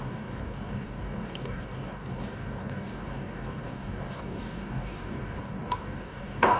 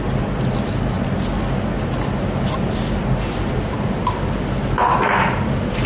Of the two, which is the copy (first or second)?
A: first